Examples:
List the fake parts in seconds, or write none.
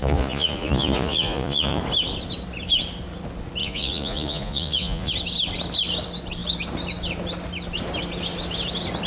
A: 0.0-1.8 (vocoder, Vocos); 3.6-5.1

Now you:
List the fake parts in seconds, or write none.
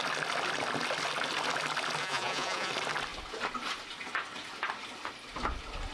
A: 2.0-2.7 (vocoder, Vocos)